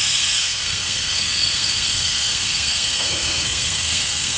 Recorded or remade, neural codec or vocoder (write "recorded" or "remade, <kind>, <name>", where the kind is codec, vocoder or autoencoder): remade, codec, SNAC